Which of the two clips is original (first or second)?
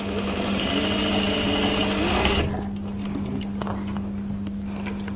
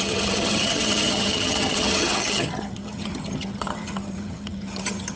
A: first